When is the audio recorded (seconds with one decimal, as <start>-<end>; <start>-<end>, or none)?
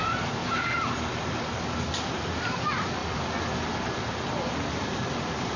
0.4-2.0; 3.0-4.5